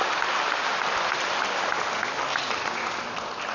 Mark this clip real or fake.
real